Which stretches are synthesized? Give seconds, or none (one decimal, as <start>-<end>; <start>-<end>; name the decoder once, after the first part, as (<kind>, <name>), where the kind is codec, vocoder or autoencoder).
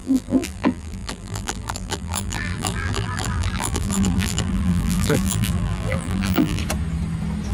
0.0-6.6 (vocoder, BigVGAN v2)